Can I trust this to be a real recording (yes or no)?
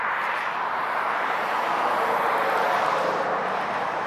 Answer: no